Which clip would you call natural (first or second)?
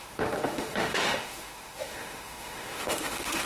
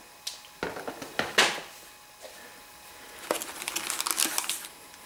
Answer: second